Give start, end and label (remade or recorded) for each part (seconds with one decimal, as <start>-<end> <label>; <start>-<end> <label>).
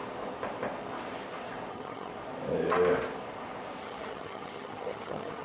0.0-1.7 recorded; 1.7-2.1 remade; 2.1-3.8 recorded; 3.8-5.4 remade